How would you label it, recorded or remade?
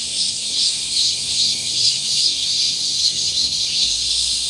remade